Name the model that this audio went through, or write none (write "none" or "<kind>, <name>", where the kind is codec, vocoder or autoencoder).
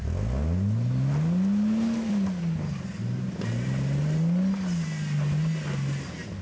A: none